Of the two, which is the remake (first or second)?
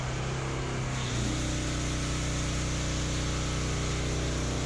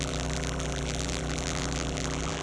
second